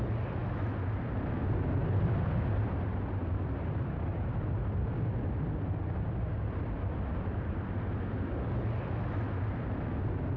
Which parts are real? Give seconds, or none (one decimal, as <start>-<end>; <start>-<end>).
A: 0.0-10.4